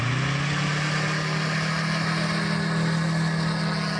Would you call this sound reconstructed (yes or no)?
no